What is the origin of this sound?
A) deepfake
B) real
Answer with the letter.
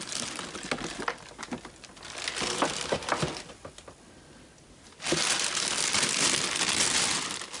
B